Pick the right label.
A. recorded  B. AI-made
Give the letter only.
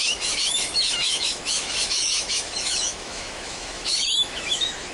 B